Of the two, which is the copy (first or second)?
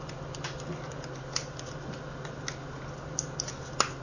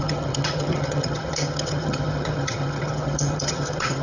second